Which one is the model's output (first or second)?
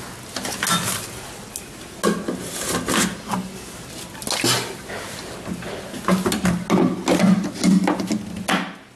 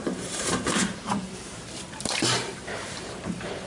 second